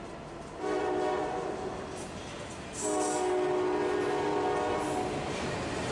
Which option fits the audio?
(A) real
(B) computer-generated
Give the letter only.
A